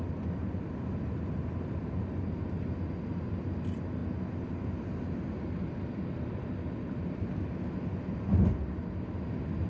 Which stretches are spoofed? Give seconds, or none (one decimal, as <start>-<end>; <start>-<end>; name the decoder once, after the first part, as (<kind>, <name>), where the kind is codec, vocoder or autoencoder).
none